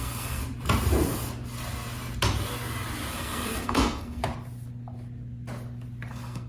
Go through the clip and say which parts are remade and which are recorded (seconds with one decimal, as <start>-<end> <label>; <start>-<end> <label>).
0.0-0.4 remade; 0.4-3.1 recorded; 3.1-4.2 remade; 4.2-6.1 recorded; 6.1-6.5 remade